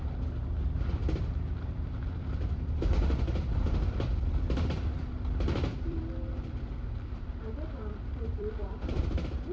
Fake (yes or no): yes